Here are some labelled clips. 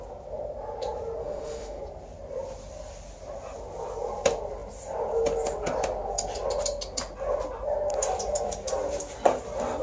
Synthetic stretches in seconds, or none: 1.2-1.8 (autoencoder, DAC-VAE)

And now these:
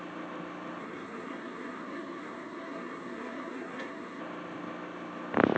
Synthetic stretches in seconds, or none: 0.8-4.2 (codec, SNAC)

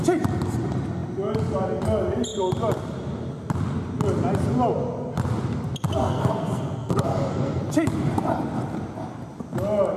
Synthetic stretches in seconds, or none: 6.0-7.6 (codec, SNAC)

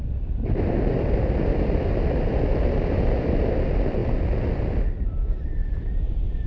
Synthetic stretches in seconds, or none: none